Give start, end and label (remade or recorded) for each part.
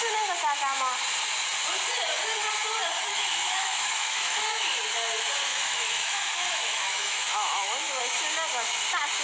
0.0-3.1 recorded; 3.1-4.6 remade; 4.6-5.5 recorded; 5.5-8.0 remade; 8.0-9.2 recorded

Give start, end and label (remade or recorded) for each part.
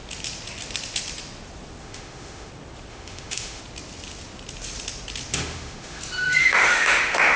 0.0-1.8 recorded; 1.8-2.5 remade; 2.5-2.9 recorded; 2.9-3.6 remade; 3.6-5.3 recorded; 5.3-6.0 remade; 6.0-6.4 recorded; 6.4-7.4 remade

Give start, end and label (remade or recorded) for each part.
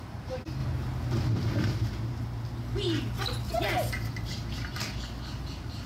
0.0-5.9 recorded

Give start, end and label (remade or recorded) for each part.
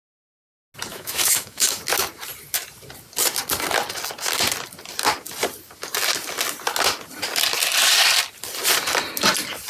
0.0-0.9 recorded; 0.9-1.8 remade; 1.8-9.7 recorded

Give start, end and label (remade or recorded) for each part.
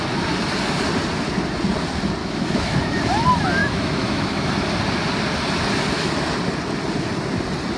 0.0-2.2 recorded; 2.2-3.0 remade; 3.0-3.6 recorded; 3.6-4.5 remade; 4.5-7.8 recorded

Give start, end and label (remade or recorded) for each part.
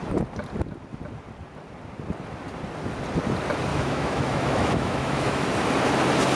0.0-3.7 recorded; 3.7-5.5 remade; 5.5-6.3 recorded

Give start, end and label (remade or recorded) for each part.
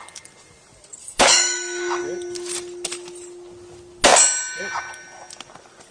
0.0-1.0 recorded; 1.0-2.0 remade; 2.0-5.9 recorded